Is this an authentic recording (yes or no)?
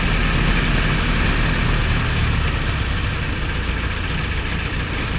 yes